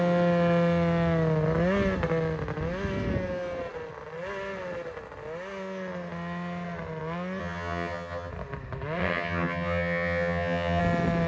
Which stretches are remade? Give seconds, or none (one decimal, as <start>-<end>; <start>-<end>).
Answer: 7.4-8.3; 9.0-10.8